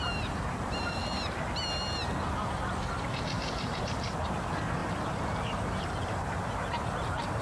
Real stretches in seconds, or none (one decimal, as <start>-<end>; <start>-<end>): 1.0-2.8